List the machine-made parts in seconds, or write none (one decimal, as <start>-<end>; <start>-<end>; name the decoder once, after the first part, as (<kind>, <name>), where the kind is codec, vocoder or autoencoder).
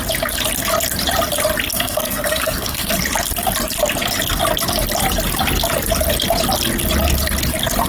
1.7-2.9 (codec, SNAC)